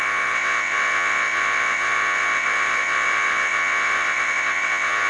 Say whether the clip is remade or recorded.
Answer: remade